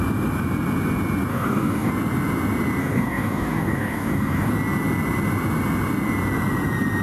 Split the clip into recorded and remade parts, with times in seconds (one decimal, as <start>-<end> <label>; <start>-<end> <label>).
0.0-1.3 recorded; 1.3-1.9 remade; 1.9-2.8 recorded; 2.8-4.5 remade; 4.5-7.0 recorded